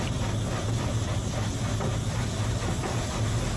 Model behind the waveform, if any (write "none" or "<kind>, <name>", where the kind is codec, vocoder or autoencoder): none